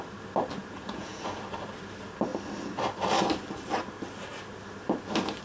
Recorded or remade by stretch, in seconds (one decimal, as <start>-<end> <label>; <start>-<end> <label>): 0.0-0.6 recorded; 0.6-1.3 remade; 1.3-5.4 recorded